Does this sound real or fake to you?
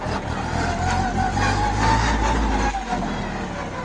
real